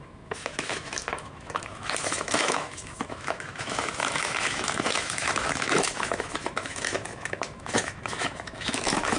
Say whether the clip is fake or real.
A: fake